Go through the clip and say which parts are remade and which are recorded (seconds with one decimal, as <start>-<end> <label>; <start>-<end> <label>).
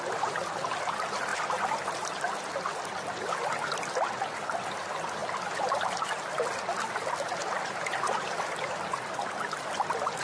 0.0-10.2 recorded